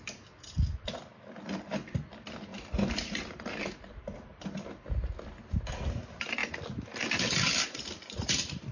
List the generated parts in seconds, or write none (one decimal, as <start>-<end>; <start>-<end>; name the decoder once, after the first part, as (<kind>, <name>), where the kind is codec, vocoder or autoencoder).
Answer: none